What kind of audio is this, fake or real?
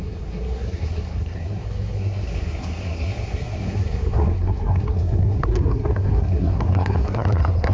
fake